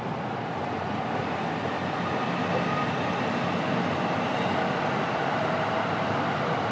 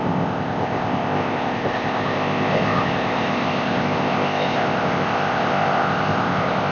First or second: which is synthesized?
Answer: second